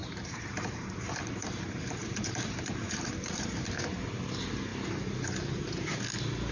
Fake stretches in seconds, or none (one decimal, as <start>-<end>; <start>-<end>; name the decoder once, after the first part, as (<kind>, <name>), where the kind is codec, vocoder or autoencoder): 0.0-3.8 (vocoder, BigVGAN v2)